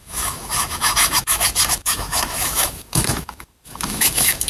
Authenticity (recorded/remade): remade